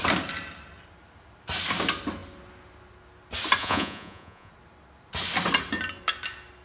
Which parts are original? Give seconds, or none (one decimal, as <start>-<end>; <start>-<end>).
0.0-3.6; 4.5-6.6